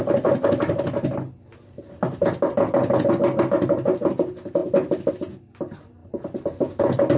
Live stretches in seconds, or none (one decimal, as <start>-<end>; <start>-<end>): 0.0-7.2